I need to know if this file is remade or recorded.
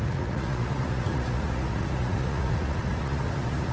remade